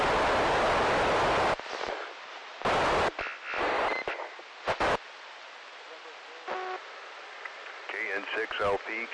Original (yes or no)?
yes